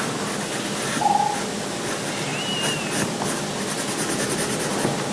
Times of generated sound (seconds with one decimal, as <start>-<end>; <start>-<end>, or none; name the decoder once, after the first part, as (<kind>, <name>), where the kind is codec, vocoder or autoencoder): none